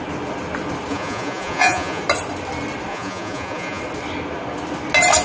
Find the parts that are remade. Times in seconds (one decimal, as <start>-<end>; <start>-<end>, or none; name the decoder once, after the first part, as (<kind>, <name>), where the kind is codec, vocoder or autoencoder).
0.9-2.0 (vocoder, Vocos); 2.9-3.8